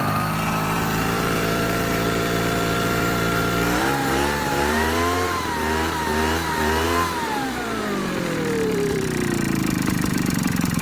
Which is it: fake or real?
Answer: fake